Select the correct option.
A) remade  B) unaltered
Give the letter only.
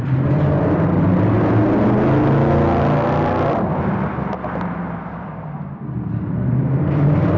B